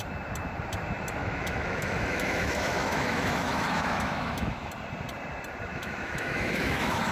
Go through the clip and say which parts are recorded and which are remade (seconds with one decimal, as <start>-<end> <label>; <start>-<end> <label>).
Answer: 0.0-1.2 recorded; 1.2-4.7 remade; 4.7-5.7 recorded; 5.7-7.1 remade